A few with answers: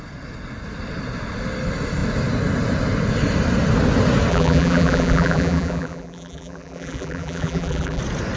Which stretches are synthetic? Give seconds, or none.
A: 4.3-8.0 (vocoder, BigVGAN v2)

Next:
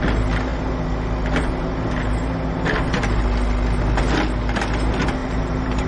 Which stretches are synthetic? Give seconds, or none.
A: 5.2-5.9 (vocoder, BigVGAN v2)

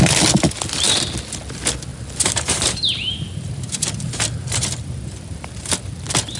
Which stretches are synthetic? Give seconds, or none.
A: 1.9-5.7 (vocoder, BigVGAN v2)